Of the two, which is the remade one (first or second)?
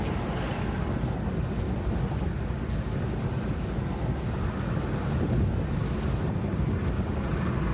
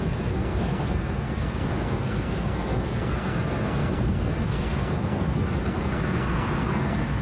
second